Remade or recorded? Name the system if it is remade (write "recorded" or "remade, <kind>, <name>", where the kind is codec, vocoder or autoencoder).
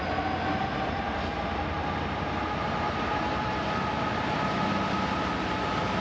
recorded